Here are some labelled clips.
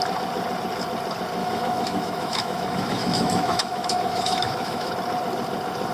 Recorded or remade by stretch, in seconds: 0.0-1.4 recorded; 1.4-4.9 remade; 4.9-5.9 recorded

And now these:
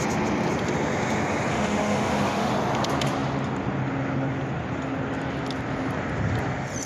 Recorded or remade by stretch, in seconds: 0.0-1.5 recorded; 1.5-2.5 remade; 2.5-6.9 recorded

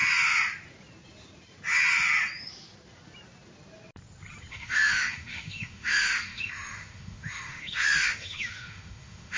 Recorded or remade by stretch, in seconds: 0.0-4.5 recorded; 4.5-9.4 remade

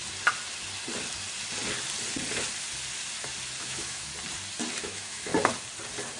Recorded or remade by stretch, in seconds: 0.0-3.6 recorded; 3.6-4.1 remade; 4.1-4.8 recorded; 4.8-5.3 remade; 5.3-6.2 recorded

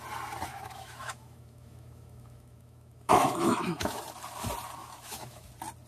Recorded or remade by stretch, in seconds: 0.0-0.5 recorded; 0.5-4.0 remade; 4.0-4.8 recorded; 4.8-5.5 remade; 5.5-5.9 recorded

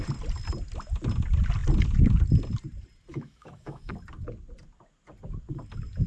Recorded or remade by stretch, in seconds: 0.0-3.1 recorded; 3.1-3.9 remade; 3.9-6.1 recorded